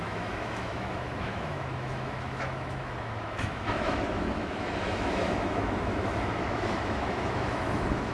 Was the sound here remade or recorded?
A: remade